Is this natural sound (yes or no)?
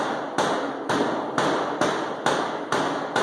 yes